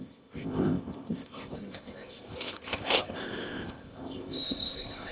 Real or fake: fake